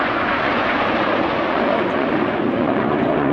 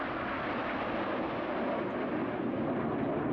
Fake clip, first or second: first